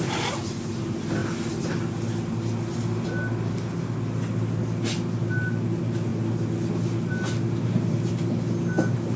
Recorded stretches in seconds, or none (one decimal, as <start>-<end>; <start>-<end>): 0.0-9.2